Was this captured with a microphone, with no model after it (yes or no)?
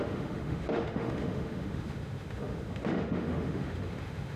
no